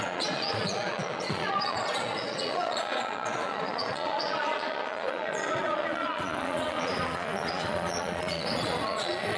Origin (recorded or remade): remade